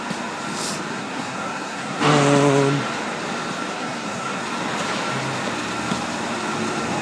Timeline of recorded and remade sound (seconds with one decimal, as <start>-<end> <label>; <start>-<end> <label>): 0.0-0.9 recorded; 0.9-2.0 remade; 2.0-3.7 recorded; 3.7-4.4 remade; 4.4-7.0 recorded